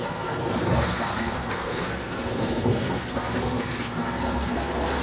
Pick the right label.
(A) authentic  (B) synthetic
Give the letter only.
B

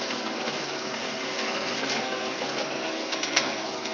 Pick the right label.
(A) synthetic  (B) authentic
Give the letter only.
A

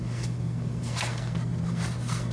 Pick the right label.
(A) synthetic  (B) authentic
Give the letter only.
A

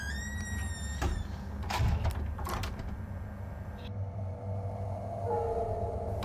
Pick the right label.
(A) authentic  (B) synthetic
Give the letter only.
A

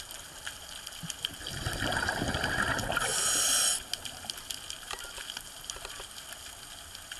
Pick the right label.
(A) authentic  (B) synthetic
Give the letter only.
A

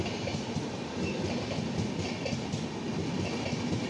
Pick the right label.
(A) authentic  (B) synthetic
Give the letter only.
A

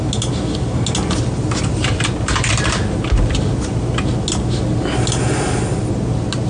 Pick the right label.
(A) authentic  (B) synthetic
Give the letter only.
A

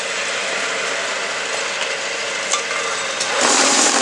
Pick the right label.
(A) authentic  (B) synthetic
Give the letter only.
A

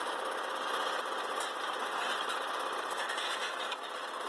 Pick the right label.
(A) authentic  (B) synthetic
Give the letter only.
A